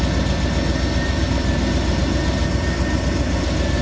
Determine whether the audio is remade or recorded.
recorded